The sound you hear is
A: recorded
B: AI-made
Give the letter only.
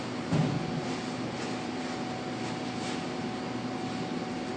A